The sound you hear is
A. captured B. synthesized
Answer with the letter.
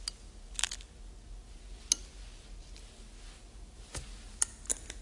A